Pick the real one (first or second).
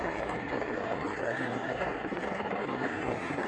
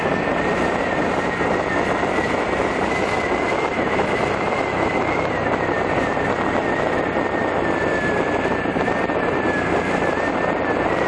second